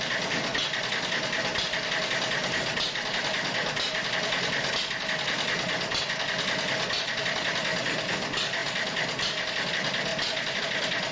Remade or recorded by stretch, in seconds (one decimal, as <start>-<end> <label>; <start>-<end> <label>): 0.0-11.1 recorded